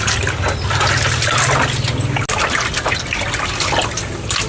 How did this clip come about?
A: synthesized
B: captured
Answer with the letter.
B